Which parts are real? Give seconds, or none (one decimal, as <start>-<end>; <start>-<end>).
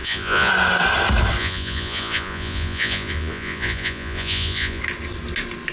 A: 0.5-1.4; 4.8-5.7